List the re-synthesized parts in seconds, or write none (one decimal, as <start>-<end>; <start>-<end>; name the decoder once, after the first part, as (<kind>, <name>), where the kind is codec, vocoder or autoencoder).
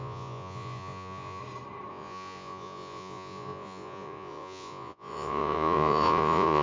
0.0-1.4 (vocoder, Vocos); 1.9-6.6